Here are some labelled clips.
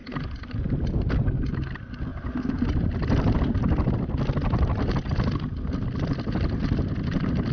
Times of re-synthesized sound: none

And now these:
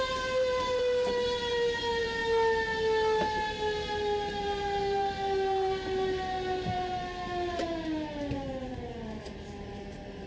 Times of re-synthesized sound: 0.0-2.2 (vocoder, BigVGAN v2); 4.4-10.3

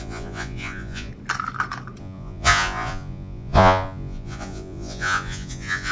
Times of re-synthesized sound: 0.0-1.1 (vocoder, Vocos); 2.0-5.9

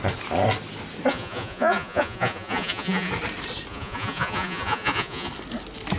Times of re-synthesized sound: 1.1-3.1 (vocoder, Vocos); 3.7-5.3

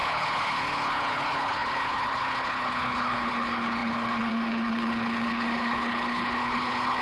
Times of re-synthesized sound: 0.0-7.0 (codec, HILCodec)

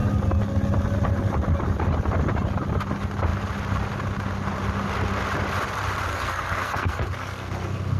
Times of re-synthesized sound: 6.1-8.0 (codec, SNAC)

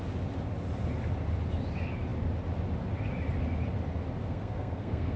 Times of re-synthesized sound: 4.2-5.2 (codec, SNAC)